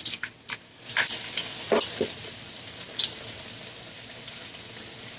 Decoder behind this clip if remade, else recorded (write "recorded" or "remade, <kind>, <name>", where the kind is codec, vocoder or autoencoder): remade, vocoder, BigVGAN v2